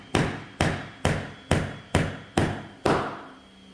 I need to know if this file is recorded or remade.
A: recorded